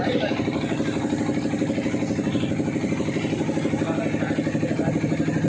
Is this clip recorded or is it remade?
recorded